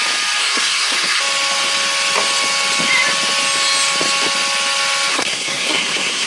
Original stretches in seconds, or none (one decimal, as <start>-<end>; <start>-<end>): 0.0-0.4; 1.2-5.1